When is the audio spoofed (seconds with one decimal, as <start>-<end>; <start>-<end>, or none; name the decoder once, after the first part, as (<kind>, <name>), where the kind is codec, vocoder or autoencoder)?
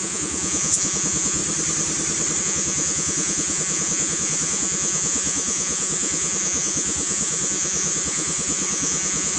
0.0-1.4 (vocoder, Vocos); 2.4-9.4